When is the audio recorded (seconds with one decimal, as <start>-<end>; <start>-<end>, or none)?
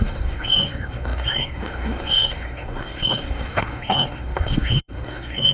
none